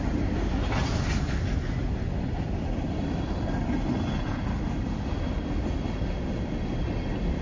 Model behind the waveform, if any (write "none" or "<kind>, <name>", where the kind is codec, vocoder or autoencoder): none